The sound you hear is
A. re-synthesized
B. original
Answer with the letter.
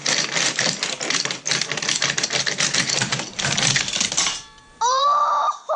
A